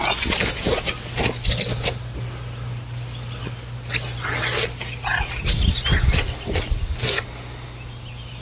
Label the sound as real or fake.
real